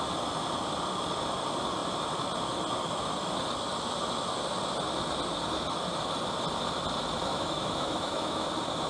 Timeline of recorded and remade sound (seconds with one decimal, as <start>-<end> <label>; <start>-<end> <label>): 0.0-7.3 recorded; 7.3-8.5 remade; 8.5-8.9 recorded